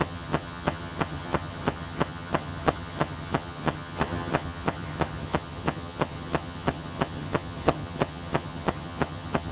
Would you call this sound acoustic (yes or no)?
no